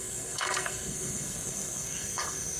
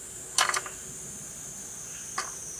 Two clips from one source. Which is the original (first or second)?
second